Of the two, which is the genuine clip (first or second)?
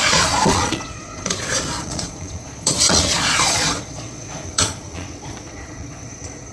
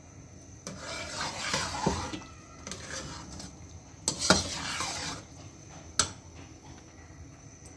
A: second